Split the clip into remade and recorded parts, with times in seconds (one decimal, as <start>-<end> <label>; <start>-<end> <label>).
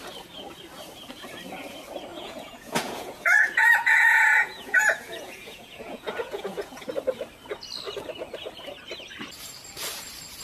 0.0-2.1 recorded; 2.1-6.9 remade; 6.9-10.4 recorded